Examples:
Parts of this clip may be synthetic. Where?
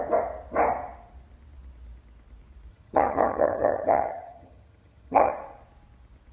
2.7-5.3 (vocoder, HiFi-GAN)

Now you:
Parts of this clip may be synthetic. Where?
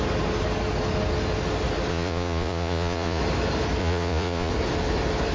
1.9-3.2 (vocoder, Vocos); 3.8-4.5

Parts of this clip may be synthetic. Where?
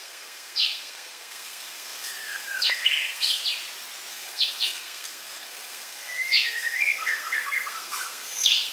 0.0-3.4 (codec, SNAC); 4.1-8.7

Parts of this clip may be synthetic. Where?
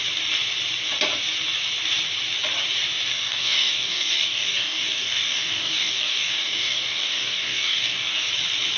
3.1-8.3 (codec, DAC)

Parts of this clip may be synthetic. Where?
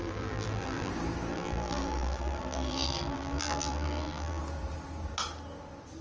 0.0-0.9 (vocoder, BigVGAN v2); 1.3-4.4